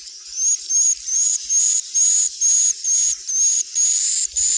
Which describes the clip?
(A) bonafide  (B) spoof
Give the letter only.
A